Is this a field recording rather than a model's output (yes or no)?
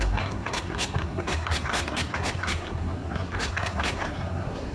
no